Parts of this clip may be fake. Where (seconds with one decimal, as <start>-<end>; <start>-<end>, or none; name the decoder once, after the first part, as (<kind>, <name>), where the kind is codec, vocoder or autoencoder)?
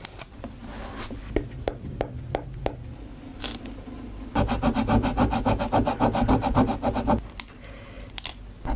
none